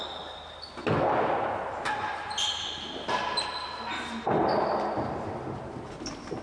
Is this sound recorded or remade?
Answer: recorded